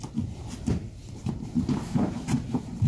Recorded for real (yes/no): no